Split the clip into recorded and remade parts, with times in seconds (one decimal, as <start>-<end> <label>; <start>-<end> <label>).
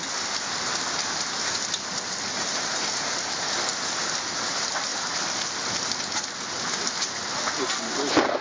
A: 0.0-8.4 recorded